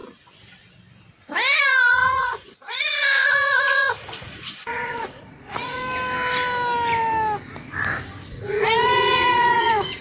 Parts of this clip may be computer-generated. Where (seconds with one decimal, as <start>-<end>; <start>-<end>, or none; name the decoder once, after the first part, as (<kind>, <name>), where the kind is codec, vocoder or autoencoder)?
1.6-5.8 (vocoder, Vocos); 8.3-10.0